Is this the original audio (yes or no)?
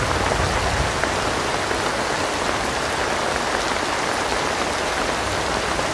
yes